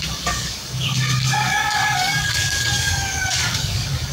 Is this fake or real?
fake